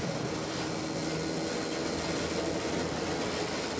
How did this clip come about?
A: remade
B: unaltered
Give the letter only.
B